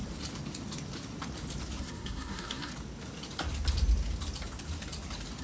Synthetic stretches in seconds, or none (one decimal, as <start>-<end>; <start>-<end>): 1.8-2.7